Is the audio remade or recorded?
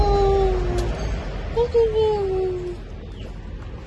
recorded